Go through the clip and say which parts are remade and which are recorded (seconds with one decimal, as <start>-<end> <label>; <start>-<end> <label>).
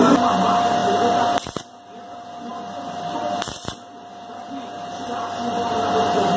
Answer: 0.0-6.4 recorded